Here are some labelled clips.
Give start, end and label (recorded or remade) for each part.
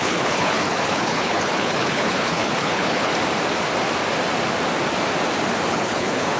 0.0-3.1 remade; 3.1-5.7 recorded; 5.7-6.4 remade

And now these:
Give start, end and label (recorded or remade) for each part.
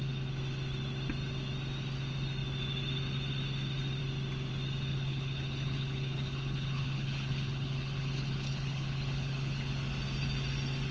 0.0-4.9 recorded; 4.9-9.7 remade; 9.7-10.9 recorded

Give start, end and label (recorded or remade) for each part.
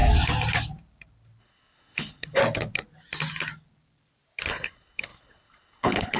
0.0-1.4 recorded; 1.4-2.4 remade; 2.4-4.5 recorded; 4.5-6.2 remade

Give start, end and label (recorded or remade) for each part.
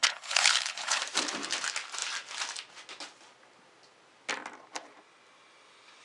0.0-1.0 remade; 1.0-6.0 recorded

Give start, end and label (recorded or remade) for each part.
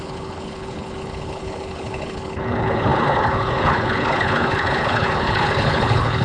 0.0-6.2 remade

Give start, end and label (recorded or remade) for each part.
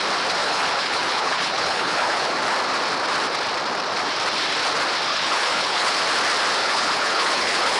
0.0-0.4 recorded; 0.4-2.3 remade; 2.3-5.1 recorded; 5.1-6.0 remade; 6.0-6.6 recorded; 6.6-7.8 remade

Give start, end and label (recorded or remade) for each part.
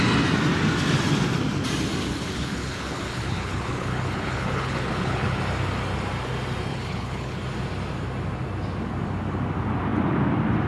0.0-2.0 recorded; 2.0-5.4 remade; 5.4-6.7 recorded; 6.7-7.4 remade; 7.4-10.7 recorded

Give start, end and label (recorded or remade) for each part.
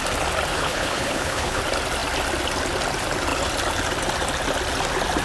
0.0-0.5 recorded; 0.5-1.6 remade; 1.6-5.2 recorded